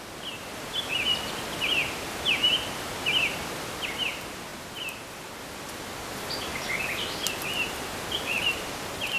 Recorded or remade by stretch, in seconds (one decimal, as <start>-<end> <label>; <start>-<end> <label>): 0.0-9.2 recorded